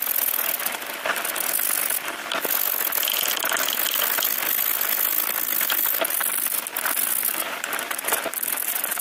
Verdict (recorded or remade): recorded